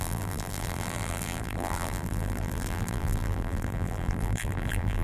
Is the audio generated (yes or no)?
yes